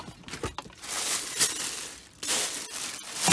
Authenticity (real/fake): real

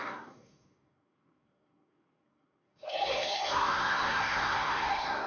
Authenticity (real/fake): fake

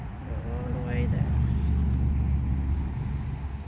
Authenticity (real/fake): real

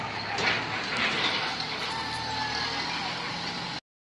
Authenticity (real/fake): real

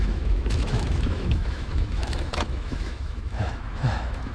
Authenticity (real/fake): fake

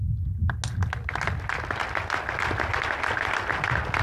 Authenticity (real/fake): real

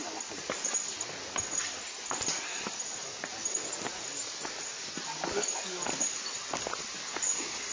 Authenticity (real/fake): real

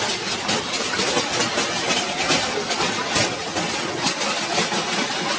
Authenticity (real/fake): real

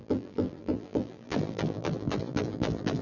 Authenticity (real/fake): fake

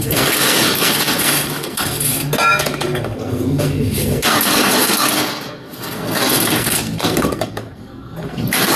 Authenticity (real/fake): fake